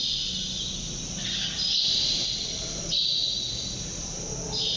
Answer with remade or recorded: recorded